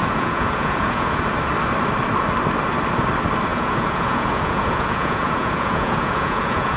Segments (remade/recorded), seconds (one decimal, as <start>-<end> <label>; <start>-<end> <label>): 0.0-1.2 remade; 1.2-3.5 recorded; 3.5-6.8 remade